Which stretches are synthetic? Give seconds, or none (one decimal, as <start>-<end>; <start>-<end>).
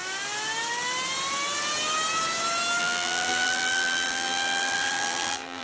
2.8-5.6